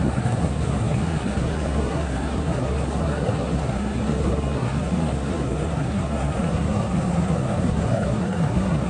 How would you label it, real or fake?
fake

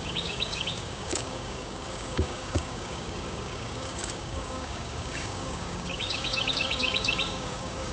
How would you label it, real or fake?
fake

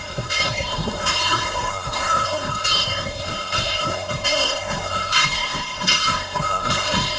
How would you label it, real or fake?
fake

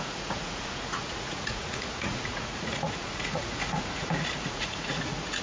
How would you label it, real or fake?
fake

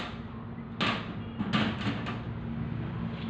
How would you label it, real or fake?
real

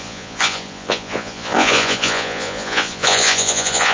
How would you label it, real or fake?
fake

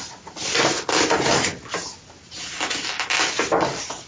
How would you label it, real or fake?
real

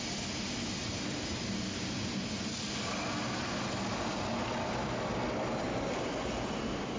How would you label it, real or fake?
real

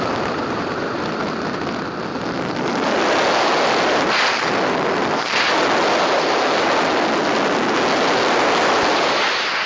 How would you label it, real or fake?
real